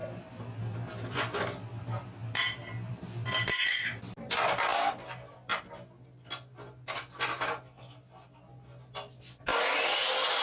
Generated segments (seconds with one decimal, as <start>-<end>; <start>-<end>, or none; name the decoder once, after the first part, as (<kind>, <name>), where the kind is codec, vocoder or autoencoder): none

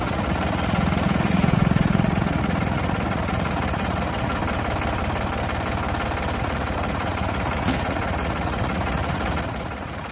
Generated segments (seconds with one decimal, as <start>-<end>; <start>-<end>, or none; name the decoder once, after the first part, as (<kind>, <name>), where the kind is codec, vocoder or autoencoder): 0.0-4.4 (vocoder, Vocos); 6.4-10.1

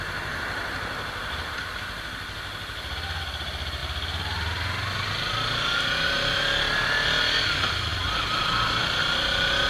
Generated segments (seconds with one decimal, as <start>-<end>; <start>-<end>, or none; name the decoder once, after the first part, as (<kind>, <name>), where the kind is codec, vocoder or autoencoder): none

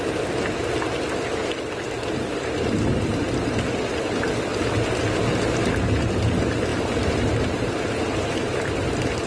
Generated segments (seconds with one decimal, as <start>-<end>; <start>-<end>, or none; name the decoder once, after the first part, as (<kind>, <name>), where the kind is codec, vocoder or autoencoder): none

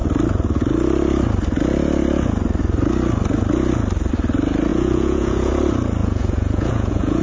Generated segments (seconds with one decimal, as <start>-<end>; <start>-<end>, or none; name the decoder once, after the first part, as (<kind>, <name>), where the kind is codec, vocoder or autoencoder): 4.7-5.5 (vocoder, Vocos); 6.0-7.2

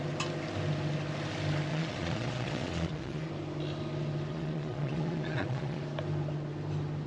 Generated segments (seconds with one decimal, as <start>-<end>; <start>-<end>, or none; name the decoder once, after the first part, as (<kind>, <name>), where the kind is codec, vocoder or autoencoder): 1.7-3.3 (vocoder, Vocos); 4.3-5.8

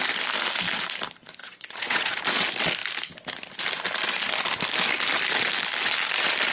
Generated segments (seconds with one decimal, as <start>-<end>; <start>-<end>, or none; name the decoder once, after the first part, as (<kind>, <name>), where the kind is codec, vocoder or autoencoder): 1.4-2.2 (vocoder, Vocos)